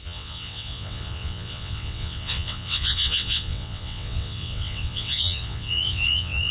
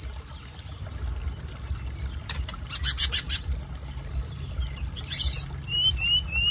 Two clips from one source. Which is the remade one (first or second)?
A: first